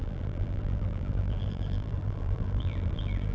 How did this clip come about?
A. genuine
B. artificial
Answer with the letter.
B